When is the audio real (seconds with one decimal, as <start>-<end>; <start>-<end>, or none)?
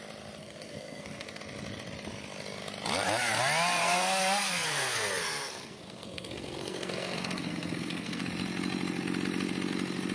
0.0-0.4; 1.4-3.8; 8.2-10.1